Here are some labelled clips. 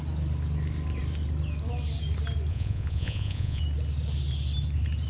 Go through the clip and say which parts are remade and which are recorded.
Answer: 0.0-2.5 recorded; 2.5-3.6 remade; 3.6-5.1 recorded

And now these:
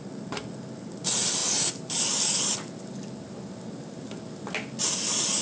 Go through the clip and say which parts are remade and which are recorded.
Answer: 0.0-5.4 recorded